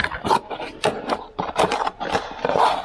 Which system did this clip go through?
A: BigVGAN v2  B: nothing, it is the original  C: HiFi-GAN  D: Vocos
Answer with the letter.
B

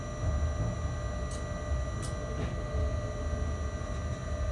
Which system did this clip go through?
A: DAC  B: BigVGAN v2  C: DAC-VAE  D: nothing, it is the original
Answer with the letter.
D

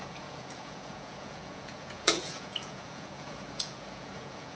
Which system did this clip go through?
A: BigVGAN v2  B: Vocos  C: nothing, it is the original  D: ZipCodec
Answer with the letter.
B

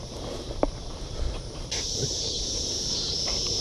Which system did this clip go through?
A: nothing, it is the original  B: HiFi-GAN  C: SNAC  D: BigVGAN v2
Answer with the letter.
D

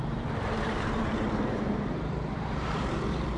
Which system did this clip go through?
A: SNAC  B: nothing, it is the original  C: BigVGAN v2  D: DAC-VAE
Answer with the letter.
C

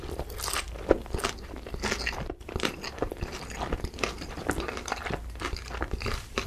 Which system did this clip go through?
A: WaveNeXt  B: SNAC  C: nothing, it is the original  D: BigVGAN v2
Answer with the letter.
D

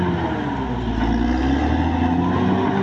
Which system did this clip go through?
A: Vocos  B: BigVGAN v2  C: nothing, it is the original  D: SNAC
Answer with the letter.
C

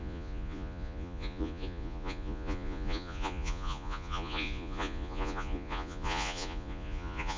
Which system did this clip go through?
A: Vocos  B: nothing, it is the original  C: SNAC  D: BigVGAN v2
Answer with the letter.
A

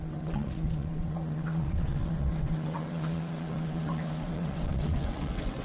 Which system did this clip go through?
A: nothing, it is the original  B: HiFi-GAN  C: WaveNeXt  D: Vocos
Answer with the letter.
C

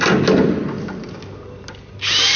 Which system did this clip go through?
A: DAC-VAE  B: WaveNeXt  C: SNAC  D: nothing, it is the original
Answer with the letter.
D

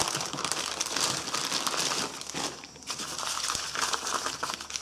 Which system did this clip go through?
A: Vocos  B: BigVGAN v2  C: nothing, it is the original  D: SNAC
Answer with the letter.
C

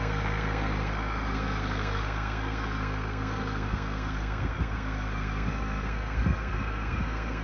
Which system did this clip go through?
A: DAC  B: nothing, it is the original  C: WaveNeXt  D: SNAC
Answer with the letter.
D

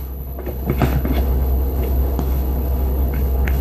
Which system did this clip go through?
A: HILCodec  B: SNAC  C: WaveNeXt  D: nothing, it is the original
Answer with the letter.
A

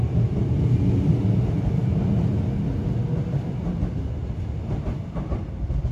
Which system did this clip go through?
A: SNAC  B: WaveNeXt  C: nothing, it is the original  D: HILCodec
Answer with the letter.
C